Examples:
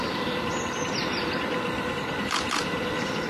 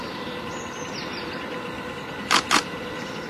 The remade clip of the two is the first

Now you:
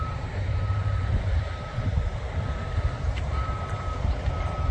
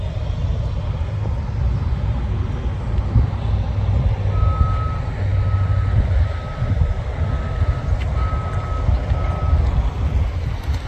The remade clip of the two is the first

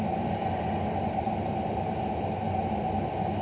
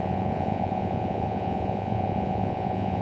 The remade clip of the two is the second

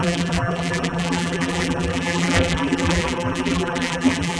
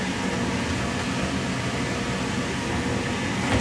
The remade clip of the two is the first